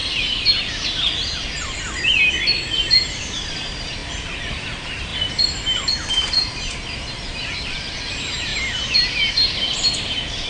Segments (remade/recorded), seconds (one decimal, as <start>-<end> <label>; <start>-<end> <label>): 0.0-2.9 recorded; 2.9-4.0 remade; 4.0-4.5 recorded; 4.5-5.1 remade; 5.1-5.9 recorded; 5.9-8.5 remade; 8.5-9.3 recorded; 9.3-10.5 remade